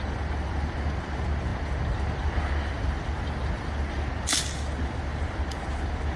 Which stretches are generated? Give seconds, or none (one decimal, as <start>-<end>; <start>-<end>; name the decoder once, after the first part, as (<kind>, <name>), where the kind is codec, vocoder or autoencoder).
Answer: none